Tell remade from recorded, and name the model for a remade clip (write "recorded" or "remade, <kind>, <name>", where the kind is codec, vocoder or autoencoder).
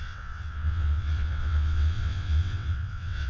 remade, vocoder, WaveNeXt